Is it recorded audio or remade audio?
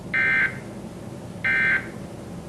recorded